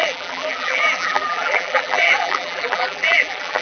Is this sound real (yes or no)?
no